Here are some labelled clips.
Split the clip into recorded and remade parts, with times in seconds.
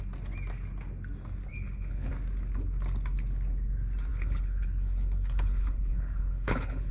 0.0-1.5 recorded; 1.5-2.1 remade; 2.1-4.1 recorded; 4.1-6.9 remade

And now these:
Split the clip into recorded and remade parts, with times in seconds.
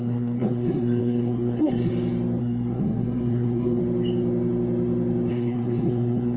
0.0-1.9 remade; 1.9-2.4 recorded; 2.4-3.8 remade; 3.8-5.3 recorded; 5.3-6.4 remade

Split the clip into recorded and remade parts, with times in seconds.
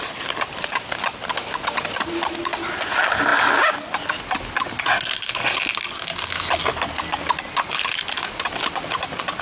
0.0-9.4 recorded